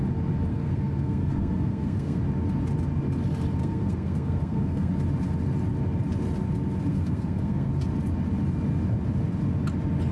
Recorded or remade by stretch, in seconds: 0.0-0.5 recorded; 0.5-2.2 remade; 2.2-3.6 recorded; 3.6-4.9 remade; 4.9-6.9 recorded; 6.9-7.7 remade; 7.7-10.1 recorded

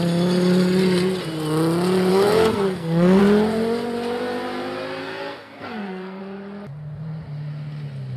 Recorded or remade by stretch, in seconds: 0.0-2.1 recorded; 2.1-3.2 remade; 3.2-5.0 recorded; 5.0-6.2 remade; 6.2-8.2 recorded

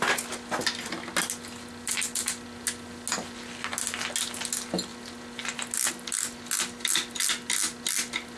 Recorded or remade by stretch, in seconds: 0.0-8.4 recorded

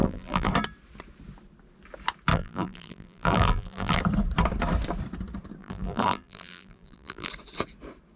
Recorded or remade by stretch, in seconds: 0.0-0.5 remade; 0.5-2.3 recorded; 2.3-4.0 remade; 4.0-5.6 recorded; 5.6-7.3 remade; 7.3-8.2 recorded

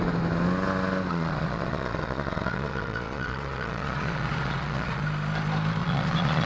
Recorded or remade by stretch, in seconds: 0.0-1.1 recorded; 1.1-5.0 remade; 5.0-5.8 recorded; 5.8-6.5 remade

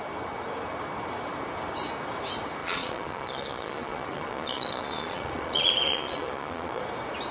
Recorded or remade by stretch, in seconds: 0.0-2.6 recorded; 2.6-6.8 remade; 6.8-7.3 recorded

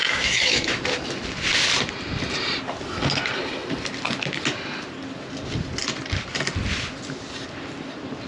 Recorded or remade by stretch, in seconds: 0.0-0.8 remade; 0.8-8.3 recorded